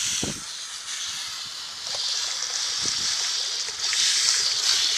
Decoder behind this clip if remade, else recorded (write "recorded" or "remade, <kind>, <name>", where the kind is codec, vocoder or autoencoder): recorded